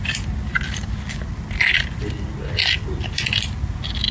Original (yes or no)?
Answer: yes